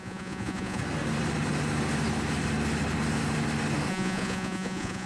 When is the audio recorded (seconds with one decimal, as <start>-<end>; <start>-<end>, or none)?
0.8-3.9

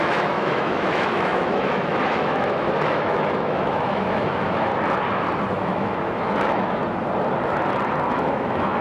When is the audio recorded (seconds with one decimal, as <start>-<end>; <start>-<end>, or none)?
4.7-5.5; 6.8-8.1

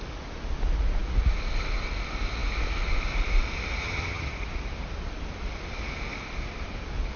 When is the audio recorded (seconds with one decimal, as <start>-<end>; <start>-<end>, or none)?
0.0-3.8; 4.3-7.2